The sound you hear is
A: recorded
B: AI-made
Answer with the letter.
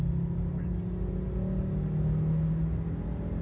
A